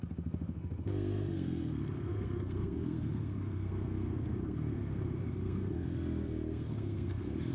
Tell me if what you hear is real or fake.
fake